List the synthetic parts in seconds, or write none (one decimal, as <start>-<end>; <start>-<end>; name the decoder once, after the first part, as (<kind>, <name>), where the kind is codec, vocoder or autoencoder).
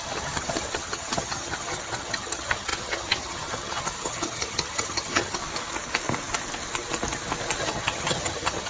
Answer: 0.0-5.4 (vocoder, HiFi-GAN); 7.6-8.7